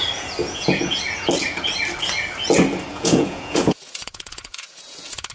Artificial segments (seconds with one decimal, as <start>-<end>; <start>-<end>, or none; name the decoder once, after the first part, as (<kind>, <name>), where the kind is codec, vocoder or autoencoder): 0.4-1.0 (vocoder, Vocos); 2.9-5.3